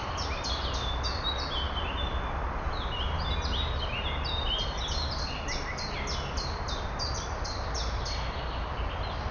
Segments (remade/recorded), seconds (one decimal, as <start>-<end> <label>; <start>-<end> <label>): 0.0-9.3 recorded